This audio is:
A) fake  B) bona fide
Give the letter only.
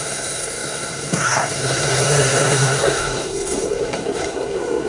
A